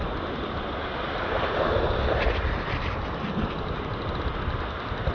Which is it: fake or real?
real